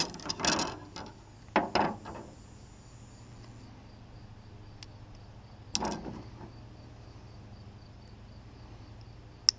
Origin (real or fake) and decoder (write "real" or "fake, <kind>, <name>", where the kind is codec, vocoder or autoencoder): real